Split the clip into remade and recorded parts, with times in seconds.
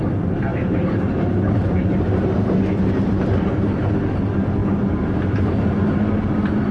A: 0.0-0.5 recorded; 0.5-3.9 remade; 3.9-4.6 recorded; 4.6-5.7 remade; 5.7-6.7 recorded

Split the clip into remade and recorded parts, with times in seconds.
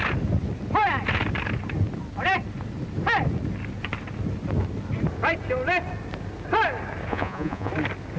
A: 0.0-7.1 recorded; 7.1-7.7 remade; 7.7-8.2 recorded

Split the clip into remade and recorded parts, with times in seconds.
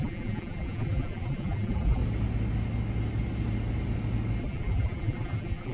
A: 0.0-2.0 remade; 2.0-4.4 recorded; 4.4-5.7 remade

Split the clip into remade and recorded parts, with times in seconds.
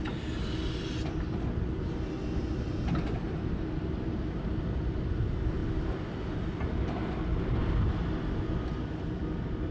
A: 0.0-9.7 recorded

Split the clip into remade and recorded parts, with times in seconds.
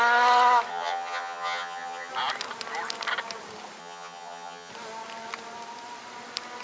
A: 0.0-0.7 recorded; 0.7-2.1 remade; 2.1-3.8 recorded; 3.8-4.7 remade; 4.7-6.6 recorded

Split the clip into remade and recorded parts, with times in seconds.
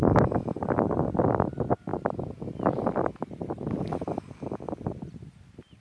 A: 0.0-5.8 recorded